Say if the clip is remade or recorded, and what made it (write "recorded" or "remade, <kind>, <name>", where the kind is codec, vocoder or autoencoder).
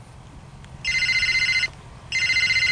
recorded